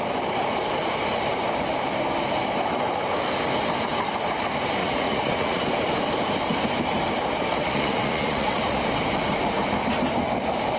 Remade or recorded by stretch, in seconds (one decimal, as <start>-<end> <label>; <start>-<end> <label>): 0.0-4.8 recorded; 4.8-5.6 remade; 5.6-7.5 recorded; 7.5-8.8 remade; 8.8-10.8 recorded